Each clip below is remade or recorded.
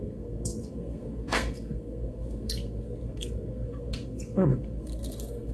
remade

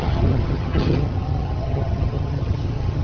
remade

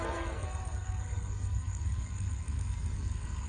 remade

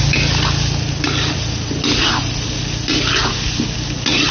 recorded